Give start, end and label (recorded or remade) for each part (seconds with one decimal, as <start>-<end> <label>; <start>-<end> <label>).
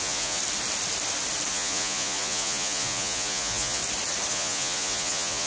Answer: 0.0-0.4 remade; 0.4-1.5 recorded; 1.5-3.8 remade; 3.8-4.3 recorded; 4.3-5.5 remade